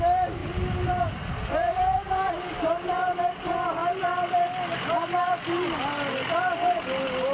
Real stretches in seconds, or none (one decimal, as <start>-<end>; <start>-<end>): 0.0-7.3